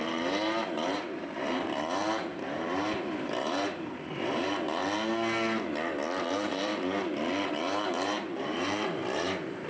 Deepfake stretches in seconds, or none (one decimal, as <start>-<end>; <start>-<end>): 0.0-4.8; 6.3-6.7; 7.5-9.7